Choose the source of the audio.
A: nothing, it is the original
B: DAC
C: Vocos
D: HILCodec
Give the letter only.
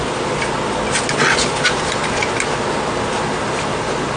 A